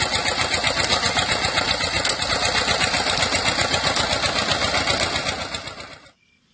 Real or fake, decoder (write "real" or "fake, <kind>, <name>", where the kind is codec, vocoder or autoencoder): real